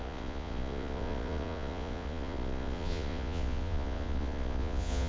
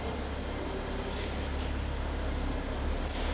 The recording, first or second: second